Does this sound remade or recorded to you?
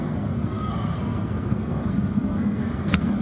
remade